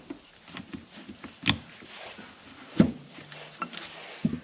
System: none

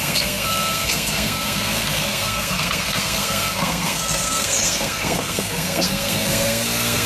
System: codec, SNAC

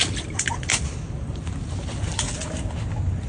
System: none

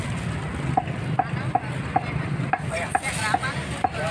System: none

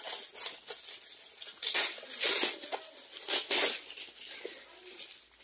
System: none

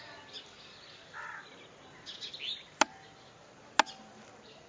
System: none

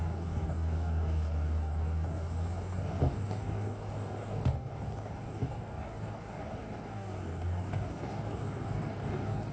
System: codec, DAC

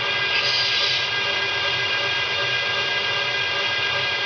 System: none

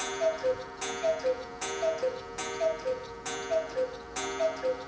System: none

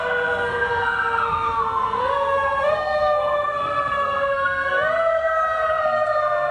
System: codec, SNAC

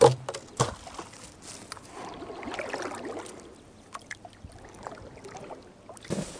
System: none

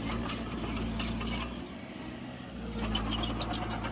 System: none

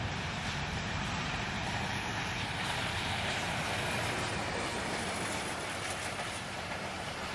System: vocoder, BigVGAN v2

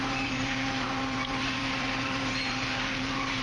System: vocoder, BigVGAN v2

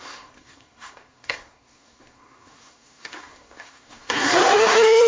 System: codec, SNAC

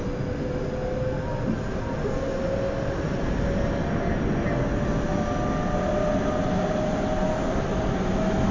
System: none